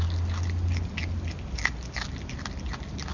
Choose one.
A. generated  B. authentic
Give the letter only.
B